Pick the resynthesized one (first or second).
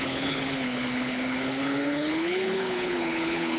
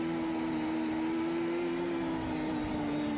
first